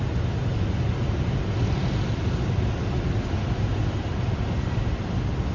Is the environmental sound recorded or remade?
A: recorded